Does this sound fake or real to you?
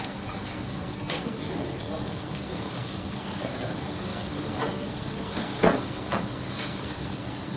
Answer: fake